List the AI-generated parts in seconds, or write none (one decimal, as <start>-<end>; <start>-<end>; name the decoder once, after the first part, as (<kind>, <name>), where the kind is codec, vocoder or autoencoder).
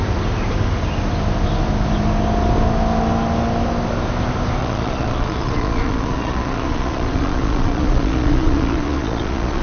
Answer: 4.6-9.6 (vocoder, Vocos)